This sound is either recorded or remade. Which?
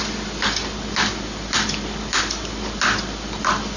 recorded